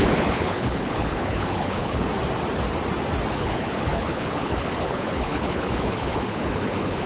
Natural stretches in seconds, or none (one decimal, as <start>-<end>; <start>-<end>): 2.1-3.3